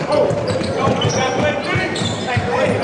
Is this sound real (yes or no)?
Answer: no